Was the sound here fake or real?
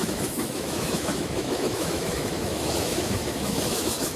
fake